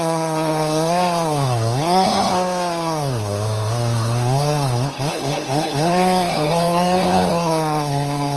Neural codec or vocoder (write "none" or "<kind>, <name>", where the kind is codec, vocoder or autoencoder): codec, SNAC